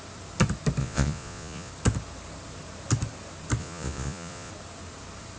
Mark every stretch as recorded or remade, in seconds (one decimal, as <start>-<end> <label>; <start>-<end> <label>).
0.0-0.8 recorded; 0.8-1.7 remade; 1.7-3.6 recorded; 3.6-4.5 remade; 4.5-5.4 recorded